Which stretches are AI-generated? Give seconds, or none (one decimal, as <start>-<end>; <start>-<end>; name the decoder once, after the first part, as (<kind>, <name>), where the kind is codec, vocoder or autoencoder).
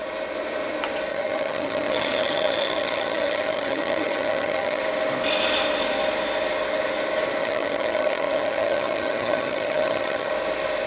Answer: 1.1-4.8 (vocoder, HiFi-GAN); 7.4-10.3